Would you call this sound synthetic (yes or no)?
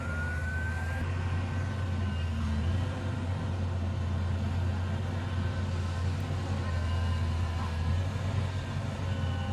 no